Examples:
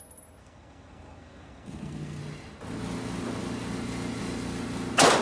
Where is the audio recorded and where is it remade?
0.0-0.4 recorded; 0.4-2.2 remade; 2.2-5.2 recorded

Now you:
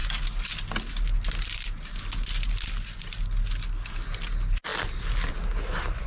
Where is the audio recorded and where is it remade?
0.0-6.1 recorded

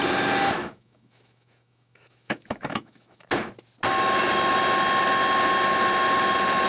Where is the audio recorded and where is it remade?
0.0-0.6 recorded; 0.6-3.3 remade; 3.3-6.7 recorded

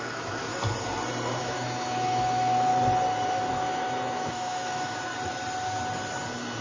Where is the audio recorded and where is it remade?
0.0-0.5 remade; 0.5-1.4 recorded; 1.4-2.7 remade; 2.7-3.5 recorded; 3.5-5.1 remade; 5.1-6.6 recorded

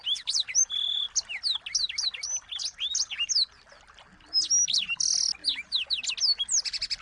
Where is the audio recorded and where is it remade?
0.0-7.0 recorded